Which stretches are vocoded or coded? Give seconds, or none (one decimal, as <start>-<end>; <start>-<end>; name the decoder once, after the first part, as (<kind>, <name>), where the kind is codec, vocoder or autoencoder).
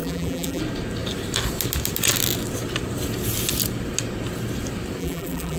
0.0-0.6 (vocoder, BigVGAN v2); 5.0-5.6